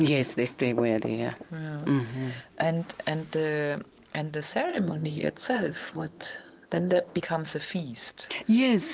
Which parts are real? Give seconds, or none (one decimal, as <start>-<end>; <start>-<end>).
0.0-4.7; 7.2-8.9